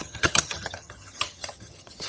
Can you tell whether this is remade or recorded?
remade